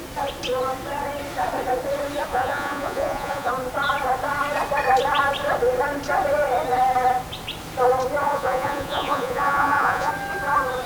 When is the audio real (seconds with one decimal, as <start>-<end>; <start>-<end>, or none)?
0.0-2.3; 3.5-8.2; 10.1-10.9